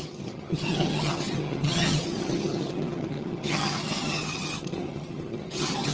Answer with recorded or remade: remade